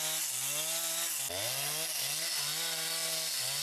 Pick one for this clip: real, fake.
real